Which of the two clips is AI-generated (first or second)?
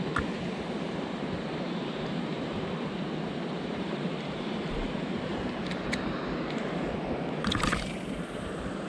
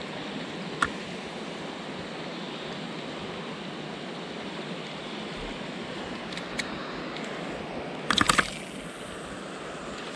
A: first